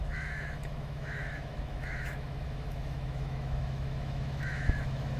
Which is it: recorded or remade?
remade